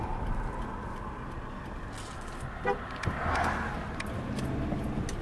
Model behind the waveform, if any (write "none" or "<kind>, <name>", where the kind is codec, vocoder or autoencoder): none